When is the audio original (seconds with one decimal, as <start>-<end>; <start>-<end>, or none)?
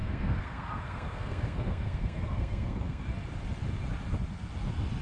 3.0-5.0